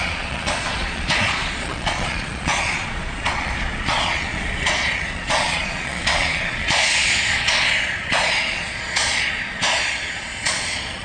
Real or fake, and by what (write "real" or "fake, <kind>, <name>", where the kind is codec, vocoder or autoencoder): fake, vocoder, Vocos